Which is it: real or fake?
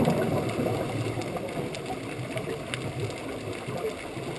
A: real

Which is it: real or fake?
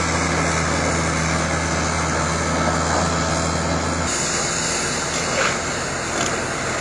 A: real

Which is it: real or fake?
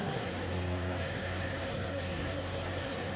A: fake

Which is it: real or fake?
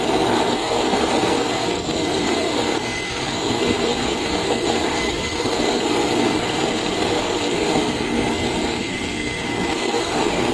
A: fake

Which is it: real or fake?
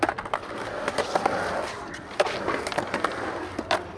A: real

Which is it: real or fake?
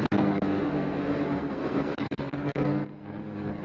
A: fake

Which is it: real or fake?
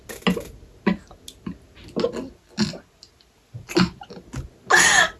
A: real